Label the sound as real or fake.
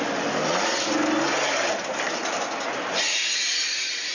real